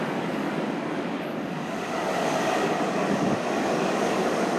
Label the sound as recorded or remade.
remade